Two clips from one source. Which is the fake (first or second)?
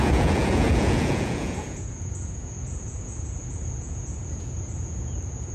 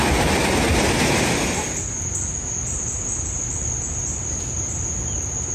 first